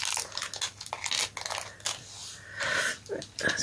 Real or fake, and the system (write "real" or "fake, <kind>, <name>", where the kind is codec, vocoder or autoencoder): real